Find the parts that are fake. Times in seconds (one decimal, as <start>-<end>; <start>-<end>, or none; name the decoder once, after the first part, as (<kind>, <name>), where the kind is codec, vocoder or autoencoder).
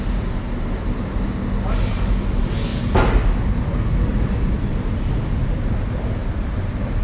4.1-4.7 (vocoder, BigVGAN v2); 6.2-7.0